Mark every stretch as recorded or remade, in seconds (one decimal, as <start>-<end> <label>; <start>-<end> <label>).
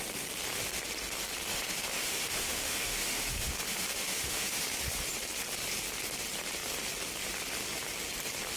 0.0-1.5 recorded; 1.5-4.8 remade; 4.8-8.6 recorded